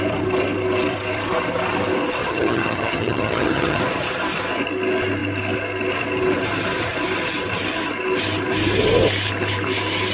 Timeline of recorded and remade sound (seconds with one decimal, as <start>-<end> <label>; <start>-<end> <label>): 0.0-2.2 recorded; 2.2-3.8 remade; 3.8-10.1 recorded